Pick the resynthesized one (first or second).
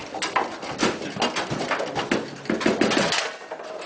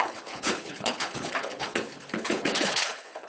second